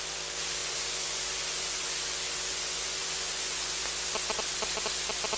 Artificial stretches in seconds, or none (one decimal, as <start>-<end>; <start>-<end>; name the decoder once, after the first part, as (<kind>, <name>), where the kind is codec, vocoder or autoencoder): 0.6-3.8 (vocoder, Vocos)

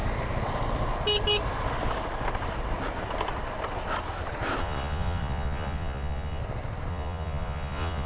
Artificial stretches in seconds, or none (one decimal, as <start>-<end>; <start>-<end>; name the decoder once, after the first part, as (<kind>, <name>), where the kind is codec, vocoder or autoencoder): 4.6-6.4 (vocoder, Vocos); 6.9-8.1

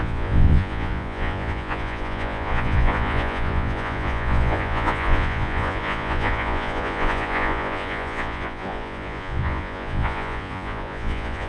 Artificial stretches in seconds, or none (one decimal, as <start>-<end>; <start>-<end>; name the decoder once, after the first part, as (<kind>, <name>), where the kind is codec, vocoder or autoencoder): 0.0-11.5 (vocoder, Vocos)